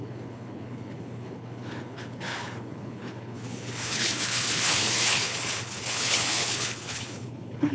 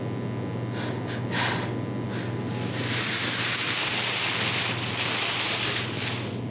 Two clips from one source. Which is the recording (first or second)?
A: second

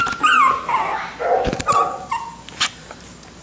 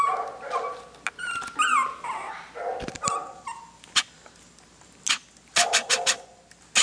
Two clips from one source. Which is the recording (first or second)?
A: second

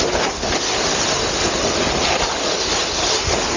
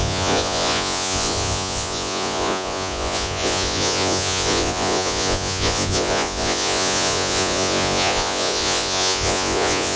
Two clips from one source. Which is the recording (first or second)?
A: first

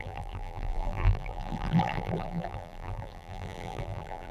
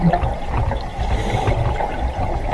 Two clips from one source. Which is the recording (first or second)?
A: second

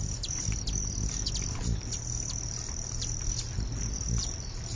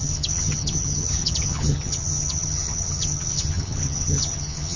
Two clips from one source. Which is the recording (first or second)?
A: first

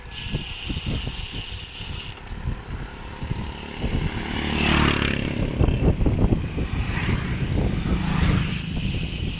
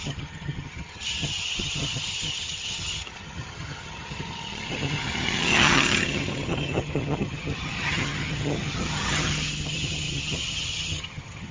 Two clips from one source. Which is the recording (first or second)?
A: first